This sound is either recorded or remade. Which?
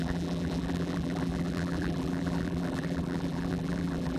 remade